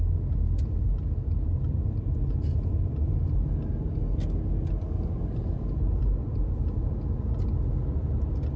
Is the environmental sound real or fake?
real